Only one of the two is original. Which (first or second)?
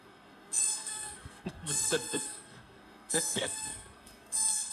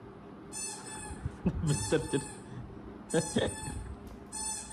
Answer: second